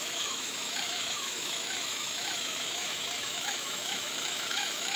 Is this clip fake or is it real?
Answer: fake